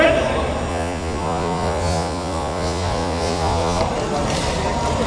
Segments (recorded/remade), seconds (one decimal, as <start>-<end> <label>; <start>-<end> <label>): 0.0-0.7 recorded; 0.7-3.8 remade; 3.8-5.1 recorded